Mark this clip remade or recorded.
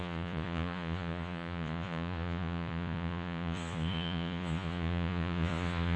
remade